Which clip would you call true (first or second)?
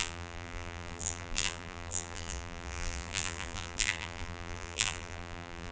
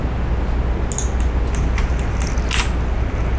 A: second